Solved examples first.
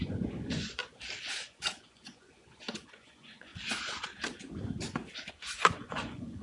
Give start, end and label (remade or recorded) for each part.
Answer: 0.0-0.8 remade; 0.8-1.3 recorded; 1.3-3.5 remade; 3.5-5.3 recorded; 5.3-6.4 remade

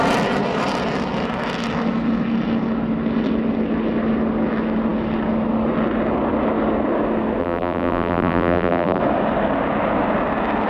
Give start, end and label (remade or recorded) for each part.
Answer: 0.0-7.4 recorded; 7.4-9.0 remade; 9.0-10.7 recorded

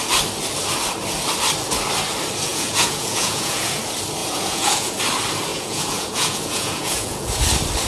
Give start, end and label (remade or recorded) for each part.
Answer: 0.0-2.5 recorded; 2.5-3.8 remade; 3.8-4.2 recorded; 4.2-5.0 remade; 5.0-5.5 recorded; 5.5-7.4 remade; 7.4-7.9 recorded

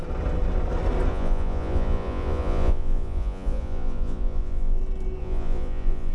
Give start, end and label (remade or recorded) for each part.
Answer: 0.0-1.1 recorded; 1.1-4.8 remade; 4.8-5.2 recorded; 5.2-6.1 remade